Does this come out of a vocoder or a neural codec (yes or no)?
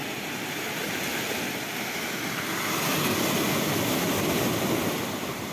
no